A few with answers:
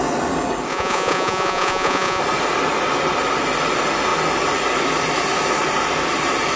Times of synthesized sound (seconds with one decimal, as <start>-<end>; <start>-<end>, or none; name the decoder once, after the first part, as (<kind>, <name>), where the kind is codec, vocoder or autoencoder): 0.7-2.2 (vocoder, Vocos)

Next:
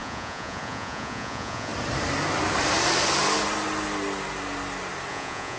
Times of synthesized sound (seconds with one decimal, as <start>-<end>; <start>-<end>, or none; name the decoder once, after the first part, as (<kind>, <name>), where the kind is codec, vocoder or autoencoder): 0.0-1.7 (vocoder, Vocos); 5.1-5.6

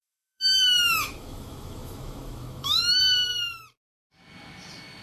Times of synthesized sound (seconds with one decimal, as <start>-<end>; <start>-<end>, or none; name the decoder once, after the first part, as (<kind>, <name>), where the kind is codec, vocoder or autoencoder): 0.0-3.0 (autoencoder, DAC-VAE)

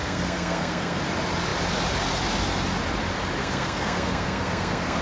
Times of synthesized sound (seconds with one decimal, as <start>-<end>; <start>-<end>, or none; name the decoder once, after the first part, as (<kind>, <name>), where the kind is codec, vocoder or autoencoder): 0.0-1.0 (codec, SNAC); 3.4-5.0

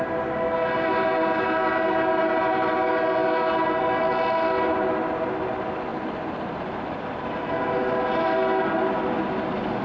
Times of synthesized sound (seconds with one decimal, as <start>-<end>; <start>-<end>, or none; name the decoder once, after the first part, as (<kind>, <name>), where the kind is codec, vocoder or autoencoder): none

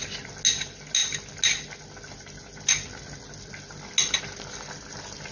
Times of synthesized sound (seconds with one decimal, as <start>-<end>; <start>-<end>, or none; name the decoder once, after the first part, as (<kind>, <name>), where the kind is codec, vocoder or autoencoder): none